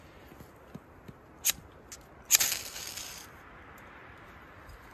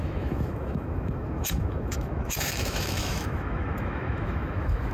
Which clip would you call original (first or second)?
first